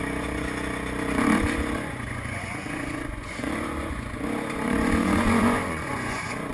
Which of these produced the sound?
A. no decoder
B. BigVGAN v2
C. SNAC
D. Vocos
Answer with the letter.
D